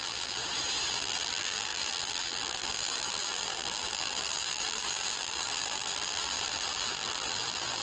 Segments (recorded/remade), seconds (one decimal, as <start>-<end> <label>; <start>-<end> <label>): 0.0-0.4 remade; 0.4-0.9 recorded; 0.9-7.8 remade